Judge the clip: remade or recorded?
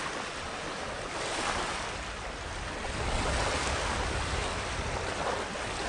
recorded